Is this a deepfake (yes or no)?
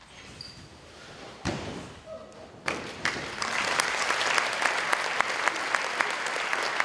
no